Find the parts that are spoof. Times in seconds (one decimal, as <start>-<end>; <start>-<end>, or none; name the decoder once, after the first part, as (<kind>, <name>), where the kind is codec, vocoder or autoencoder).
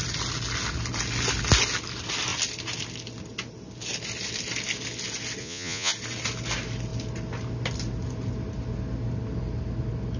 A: 5.4-5.9 (vocoder, Vocos)